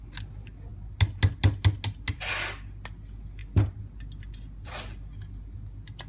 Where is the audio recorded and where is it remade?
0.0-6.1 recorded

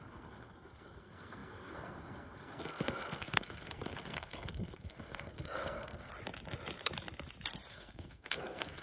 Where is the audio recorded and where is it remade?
0.0-6.1 remade; 6.1-7.7 recorded; 7.7-8.8 remade

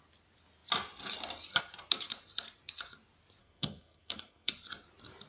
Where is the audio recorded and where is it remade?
0.0-3.4 recorded; 3.4-4.5 remade; 4.5-5.3 recorded